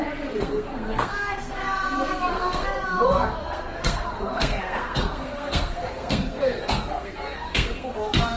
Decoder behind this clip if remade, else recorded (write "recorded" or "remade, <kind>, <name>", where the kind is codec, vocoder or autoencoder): remade, codec, SNAC